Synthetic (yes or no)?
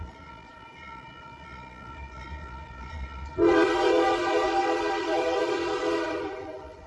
yes